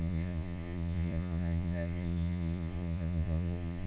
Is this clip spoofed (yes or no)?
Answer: yes